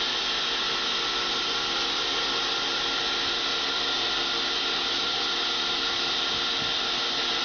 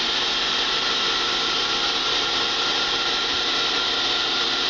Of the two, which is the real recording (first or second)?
first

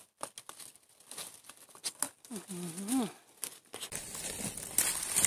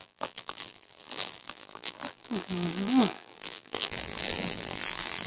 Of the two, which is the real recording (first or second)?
first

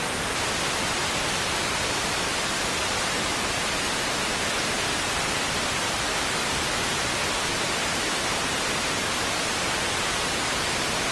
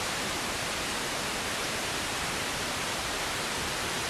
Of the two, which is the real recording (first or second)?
first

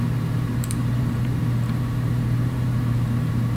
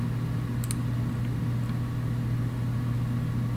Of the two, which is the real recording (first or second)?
second